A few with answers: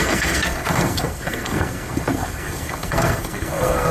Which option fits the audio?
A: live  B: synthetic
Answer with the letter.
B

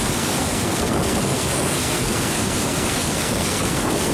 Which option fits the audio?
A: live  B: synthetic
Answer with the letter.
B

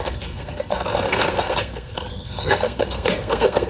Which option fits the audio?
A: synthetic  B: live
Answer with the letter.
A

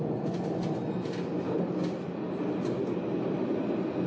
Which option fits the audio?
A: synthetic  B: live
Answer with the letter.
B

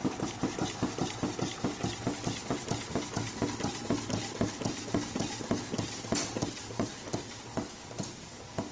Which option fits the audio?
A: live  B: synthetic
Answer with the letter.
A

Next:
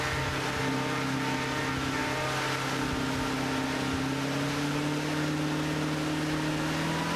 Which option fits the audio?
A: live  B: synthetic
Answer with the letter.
A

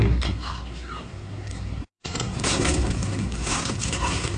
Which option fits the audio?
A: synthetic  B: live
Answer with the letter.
A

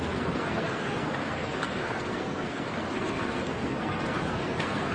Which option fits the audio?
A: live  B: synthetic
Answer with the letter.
B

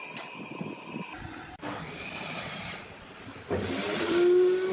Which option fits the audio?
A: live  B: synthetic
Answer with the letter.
A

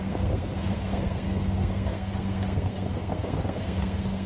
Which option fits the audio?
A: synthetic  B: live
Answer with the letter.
A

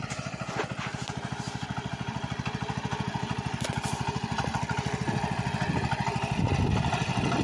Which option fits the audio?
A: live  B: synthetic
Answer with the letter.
A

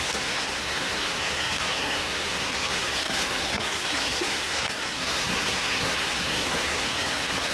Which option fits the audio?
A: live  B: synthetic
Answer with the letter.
B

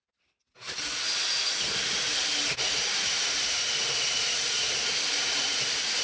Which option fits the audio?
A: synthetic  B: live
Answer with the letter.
B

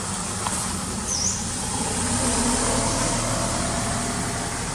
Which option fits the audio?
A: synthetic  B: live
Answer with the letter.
B